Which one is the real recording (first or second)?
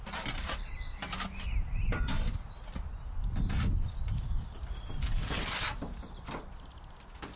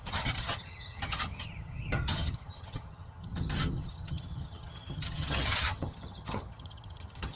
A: first